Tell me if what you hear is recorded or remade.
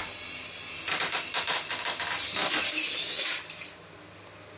recorded